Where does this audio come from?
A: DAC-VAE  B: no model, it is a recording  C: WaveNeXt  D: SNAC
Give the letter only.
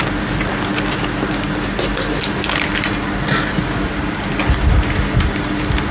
B